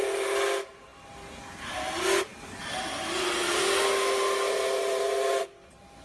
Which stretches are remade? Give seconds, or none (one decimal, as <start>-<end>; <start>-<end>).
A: none